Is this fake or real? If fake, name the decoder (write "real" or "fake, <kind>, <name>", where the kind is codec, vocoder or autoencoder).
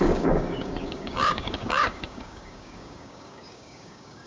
fake, codec, DAC